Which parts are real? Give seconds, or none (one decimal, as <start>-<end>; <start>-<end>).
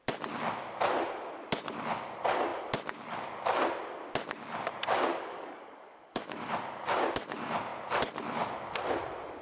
0.0-5.1; 6.5-9.4